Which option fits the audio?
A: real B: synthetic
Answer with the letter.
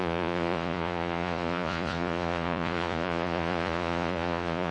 B